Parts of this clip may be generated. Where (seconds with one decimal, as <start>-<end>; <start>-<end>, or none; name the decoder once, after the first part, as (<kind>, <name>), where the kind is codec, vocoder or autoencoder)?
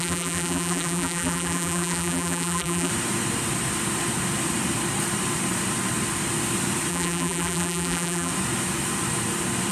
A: 0.0-2.9 (vocoder, BigVGAN v2); 6.9-8.3